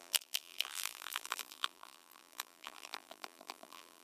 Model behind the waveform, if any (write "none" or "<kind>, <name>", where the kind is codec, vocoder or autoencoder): vocoder, BigVGAN v2